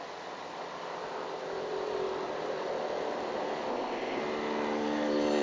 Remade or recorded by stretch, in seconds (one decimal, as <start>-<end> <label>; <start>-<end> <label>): 0.0-3.7 recorded; 3.7-4.2 remade; 4.2-5.4 recorded